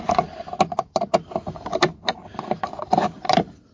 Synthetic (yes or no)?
no